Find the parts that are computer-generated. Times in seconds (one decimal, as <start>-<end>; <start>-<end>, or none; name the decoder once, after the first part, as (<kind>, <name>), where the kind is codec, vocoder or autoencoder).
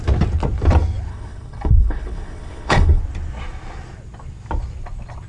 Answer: 1.1-3.0 (codec, HILCodec)